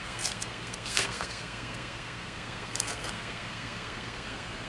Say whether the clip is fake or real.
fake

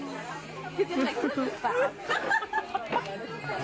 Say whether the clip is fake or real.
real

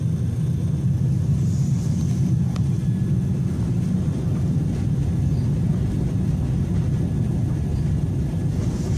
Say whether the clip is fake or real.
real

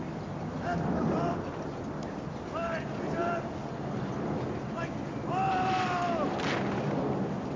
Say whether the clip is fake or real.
real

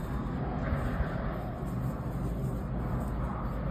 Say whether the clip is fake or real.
real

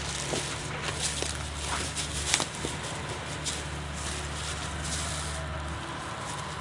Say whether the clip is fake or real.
real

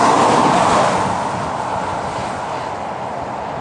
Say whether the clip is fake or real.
real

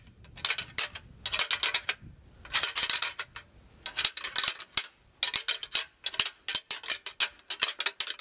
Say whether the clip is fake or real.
real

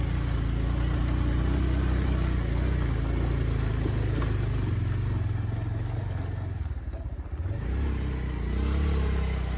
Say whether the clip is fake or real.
real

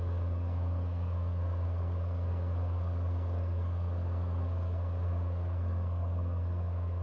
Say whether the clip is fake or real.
fake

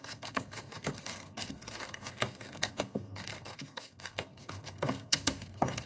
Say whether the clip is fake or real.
fake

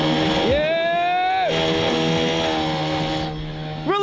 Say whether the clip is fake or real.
real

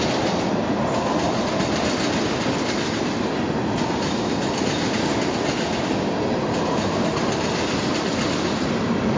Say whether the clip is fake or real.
real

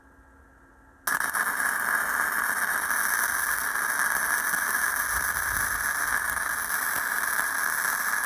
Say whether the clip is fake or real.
real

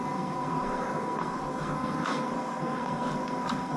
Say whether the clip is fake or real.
fake